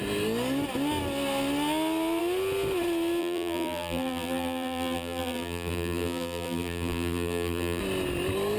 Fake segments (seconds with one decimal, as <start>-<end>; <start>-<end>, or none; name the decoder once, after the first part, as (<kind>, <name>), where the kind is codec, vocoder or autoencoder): 3.2-7.8 (vocoder, BigVGAN v2)